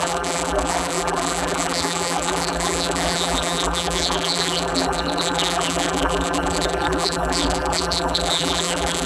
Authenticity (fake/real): fake